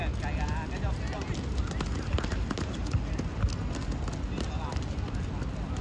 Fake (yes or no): no